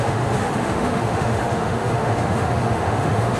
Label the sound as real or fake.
fake